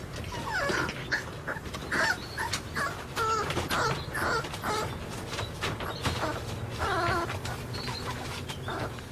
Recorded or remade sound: recorded